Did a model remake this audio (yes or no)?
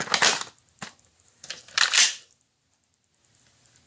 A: no